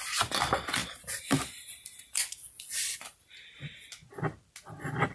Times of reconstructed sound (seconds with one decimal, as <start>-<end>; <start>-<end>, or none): none